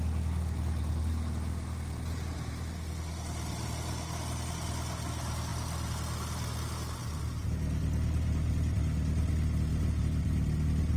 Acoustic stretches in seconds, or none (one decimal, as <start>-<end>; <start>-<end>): 0.0-9.7